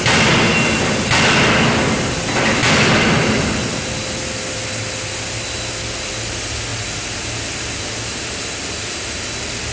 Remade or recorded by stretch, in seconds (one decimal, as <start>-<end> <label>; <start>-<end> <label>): 0.0-9.7 recorded